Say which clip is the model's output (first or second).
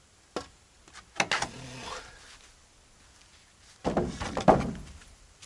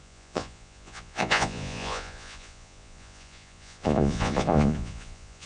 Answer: second